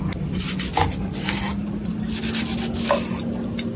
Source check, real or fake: real